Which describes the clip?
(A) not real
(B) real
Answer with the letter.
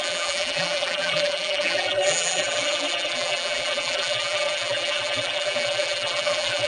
A